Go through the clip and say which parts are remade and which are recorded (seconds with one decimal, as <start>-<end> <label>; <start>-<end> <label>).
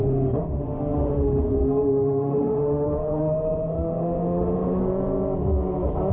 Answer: 0.0-4.8 remade; 4.8-6.1 recorded